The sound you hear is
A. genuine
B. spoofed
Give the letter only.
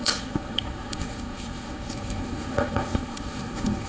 B